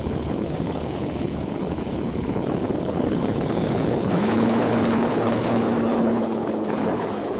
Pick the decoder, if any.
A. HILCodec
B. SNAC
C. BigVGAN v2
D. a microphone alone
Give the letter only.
A